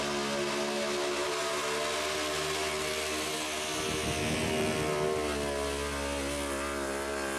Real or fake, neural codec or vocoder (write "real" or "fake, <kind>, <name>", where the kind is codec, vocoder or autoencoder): real